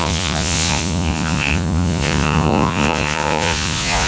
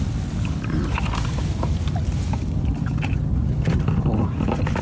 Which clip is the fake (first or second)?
first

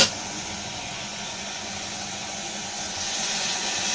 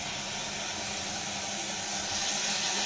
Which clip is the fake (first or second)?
first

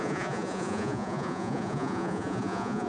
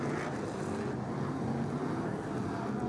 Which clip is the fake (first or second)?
first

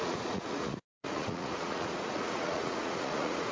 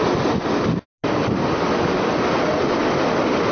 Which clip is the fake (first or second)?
first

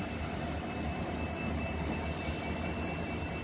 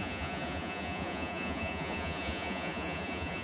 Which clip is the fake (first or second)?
second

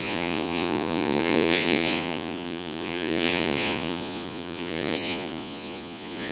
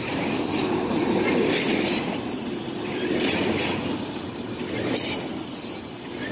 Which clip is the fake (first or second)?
first